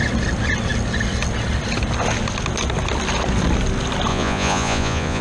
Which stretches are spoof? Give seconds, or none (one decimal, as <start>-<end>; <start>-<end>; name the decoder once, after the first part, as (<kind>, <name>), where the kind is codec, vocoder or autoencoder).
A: 4.1-5.2 (vocoder, Vocos)